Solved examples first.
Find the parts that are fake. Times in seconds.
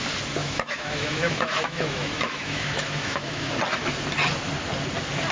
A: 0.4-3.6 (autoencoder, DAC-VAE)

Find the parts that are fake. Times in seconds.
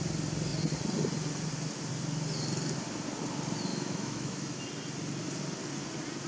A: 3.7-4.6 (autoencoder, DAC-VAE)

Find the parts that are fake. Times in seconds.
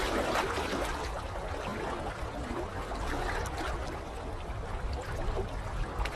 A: none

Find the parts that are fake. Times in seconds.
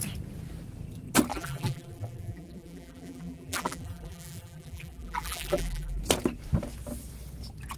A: 1.3-6.0 (vocoder, BigVGAN v2)